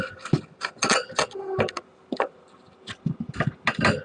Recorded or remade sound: recorded